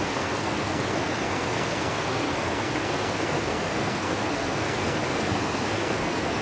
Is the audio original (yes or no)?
no